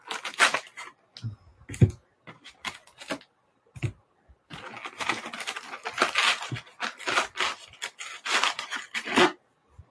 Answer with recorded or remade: recorded